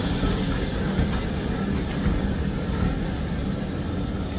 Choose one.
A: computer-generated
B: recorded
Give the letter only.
B